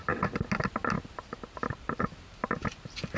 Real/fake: real